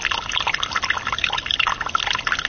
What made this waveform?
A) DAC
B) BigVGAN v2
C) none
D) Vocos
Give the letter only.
C